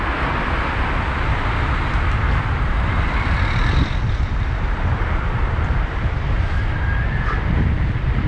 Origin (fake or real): fake